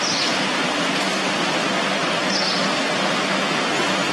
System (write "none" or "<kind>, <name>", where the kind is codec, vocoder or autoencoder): none